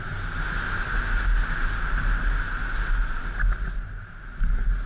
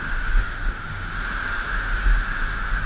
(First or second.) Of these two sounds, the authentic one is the first